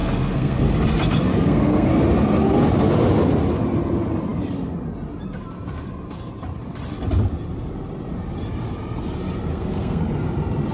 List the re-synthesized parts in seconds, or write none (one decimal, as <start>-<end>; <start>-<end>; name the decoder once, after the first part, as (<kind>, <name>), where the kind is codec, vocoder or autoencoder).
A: 0.0-0.6 (codec, SNAC); 1.3-1.9; 9.5-10.0